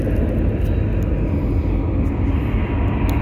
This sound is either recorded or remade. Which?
recorded